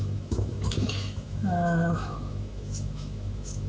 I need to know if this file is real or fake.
fake